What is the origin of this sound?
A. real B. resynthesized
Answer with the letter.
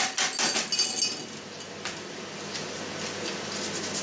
A